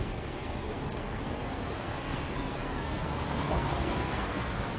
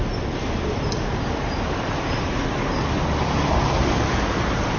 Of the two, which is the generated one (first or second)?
first